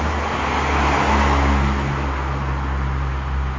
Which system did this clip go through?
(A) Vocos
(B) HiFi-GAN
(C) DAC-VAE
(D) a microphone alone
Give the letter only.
D